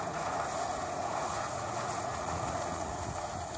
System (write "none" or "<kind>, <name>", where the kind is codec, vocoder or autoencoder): vocoder, Vocos